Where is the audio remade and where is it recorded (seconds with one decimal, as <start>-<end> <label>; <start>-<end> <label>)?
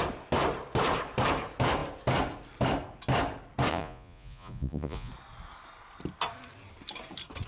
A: 0.0-3.7 recorded; 3.7-5.1 remade; 5.1-7.5 recorded